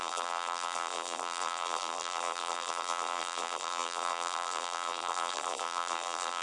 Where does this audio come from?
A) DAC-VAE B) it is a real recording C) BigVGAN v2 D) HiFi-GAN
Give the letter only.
C